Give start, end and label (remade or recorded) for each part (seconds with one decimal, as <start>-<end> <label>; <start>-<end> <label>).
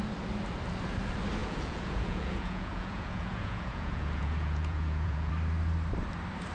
0.0-1.4 recorded; 1.4-5.3 remade; 5.3-6.5 recorded